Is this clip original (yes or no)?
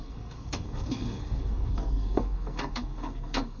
no